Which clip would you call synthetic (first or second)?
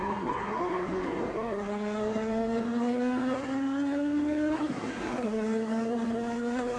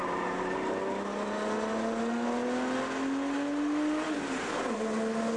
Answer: first